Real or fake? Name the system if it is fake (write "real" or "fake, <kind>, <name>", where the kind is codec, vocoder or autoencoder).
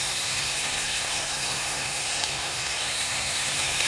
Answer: fake, codec, SNAC